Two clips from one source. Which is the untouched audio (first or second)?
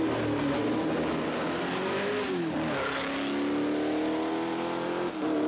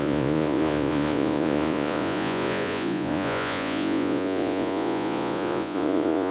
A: first